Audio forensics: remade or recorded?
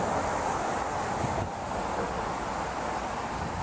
recorded